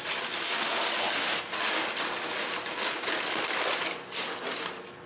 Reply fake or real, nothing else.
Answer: real